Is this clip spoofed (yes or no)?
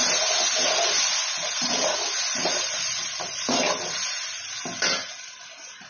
no